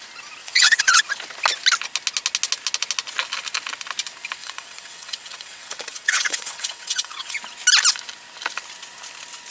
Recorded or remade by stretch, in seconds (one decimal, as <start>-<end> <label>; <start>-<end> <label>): 0.0-0.4 recorded; 0.4-1.0 remade; 1.0-4.4 recorded; 4.4-7.4 remade; 7.4-9.5 recorded